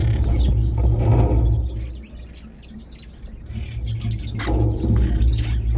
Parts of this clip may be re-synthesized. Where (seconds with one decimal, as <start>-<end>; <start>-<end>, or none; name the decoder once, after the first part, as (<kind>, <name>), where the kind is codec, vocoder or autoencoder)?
none